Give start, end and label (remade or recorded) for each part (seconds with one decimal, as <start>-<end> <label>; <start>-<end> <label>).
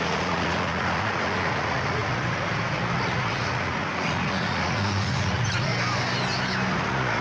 0.0-5.7 remade; 5.7-6.7 recorded; 6.7-7.2 remade